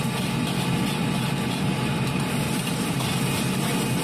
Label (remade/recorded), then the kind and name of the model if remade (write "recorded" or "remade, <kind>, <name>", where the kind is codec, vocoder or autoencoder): recorded